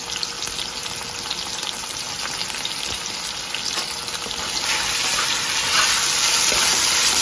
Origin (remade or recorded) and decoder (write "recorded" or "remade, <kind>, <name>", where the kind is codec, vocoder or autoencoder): recorded